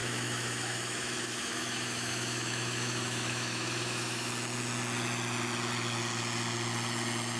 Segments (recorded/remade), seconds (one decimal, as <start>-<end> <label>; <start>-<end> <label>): 0.0-4.3 remade; 4.3-7.4 recorded